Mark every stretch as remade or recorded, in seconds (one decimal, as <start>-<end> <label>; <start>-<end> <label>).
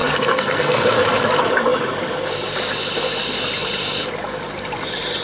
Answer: 0.0-1.0 remade; 1.0-5.2 recorded